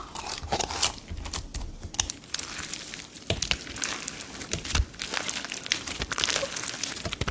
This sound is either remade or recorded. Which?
recorded